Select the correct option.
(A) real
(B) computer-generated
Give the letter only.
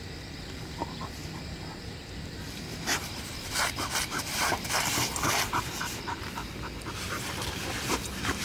B